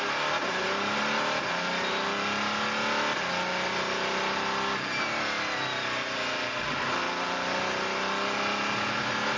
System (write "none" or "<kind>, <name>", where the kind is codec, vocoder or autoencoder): none